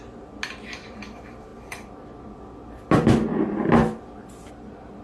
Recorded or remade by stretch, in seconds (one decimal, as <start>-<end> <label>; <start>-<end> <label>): 0.0-5.0 recorded

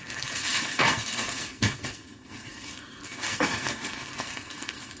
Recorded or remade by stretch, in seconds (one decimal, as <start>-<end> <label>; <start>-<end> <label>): 0.0-5.0 remade